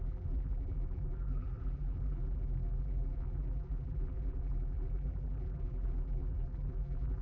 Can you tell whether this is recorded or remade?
remade